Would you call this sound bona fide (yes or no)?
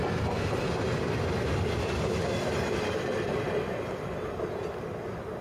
yes